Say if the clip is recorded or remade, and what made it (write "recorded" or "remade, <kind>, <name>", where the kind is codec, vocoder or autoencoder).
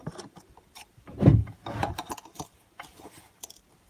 remade, vocoder, BigVGAN v2